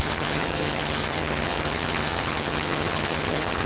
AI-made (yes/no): yes